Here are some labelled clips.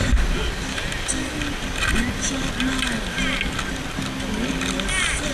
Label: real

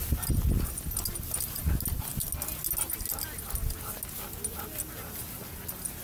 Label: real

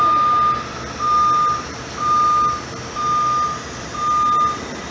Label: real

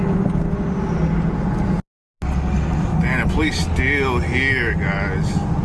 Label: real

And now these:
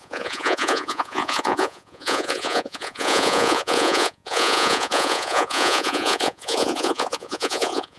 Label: fake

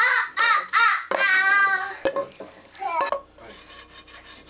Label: real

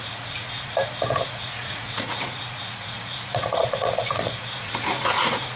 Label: fake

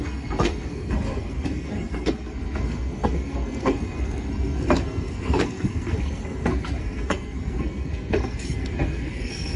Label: fake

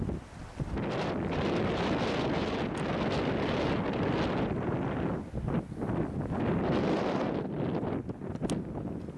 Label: real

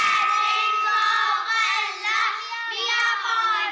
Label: real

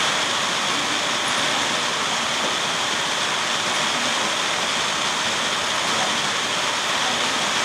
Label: real